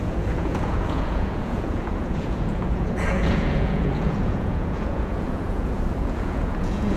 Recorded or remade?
remade